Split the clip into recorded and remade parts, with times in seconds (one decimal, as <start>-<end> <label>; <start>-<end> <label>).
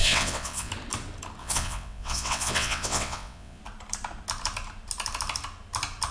0.0-0.7 remade; 0.7-1.4 recorded; 1.4-3.6 remade; 3.6-6.1 recorded